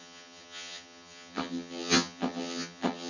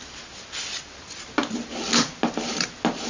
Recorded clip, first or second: second